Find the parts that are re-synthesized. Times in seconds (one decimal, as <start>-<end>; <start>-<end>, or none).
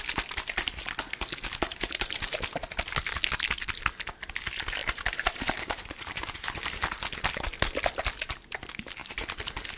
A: 1.4-2.5; 4.8-6.6; 9.0-9.8